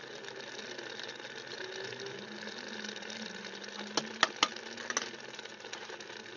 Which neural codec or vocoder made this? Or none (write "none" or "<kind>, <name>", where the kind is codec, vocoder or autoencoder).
none